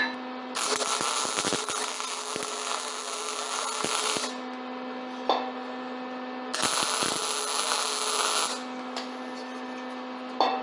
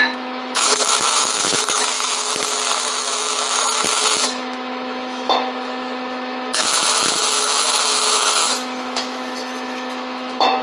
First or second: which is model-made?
second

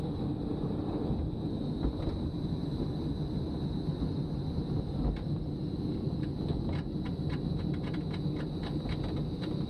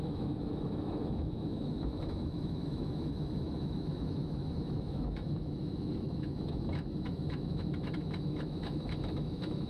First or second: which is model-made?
second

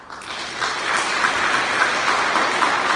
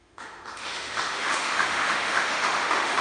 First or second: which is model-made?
second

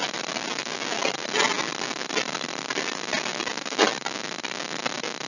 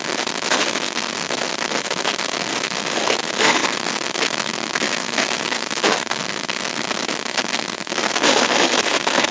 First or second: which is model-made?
second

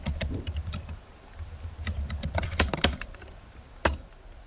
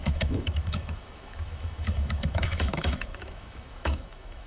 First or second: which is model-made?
second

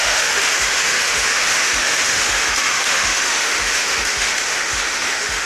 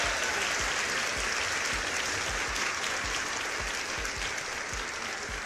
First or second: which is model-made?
first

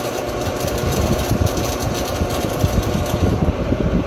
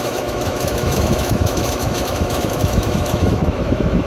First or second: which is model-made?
second